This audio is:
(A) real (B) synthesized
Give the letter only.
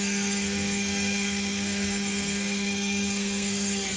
B